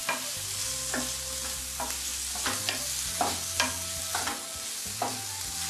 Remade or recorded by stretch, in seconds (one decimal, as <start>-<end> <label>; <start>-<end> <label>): 0.0-5.7 recorded